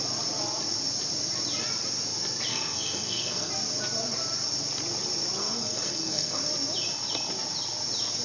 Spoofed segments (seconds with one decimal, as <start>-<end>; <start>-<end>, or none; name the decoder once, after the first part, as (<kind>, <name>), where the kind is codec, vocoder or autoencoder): 2.5-3.5 (codec, SNAC); 5.4-6.4